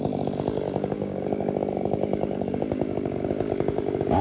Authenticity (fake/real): fake